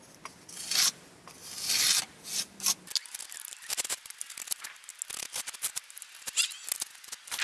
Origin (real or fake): real